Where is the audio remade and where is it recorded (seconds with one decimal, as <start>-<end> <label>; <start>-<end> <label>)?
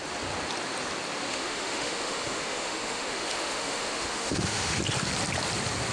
0.0-1.3 recorded; 1.3-4.8 remade; 4.8-5.9 recorded